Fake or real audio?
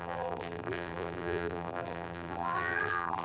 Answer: fake